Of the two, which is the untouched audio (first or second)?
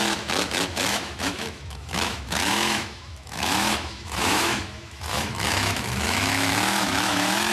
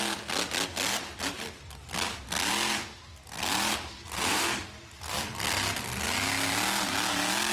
second